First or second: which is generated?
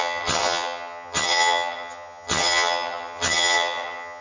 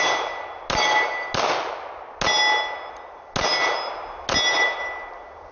first